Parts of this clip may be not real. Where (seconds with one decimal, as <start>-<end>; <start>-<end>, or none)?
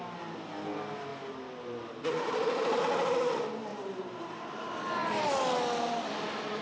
3.7-5.3